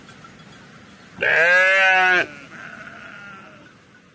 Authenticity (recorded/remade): recorded